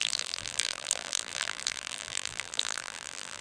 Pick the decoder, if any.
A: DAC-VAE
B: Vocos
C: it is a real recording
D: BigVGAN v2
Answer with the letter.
D